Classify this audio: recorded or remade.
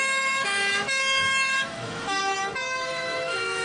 remade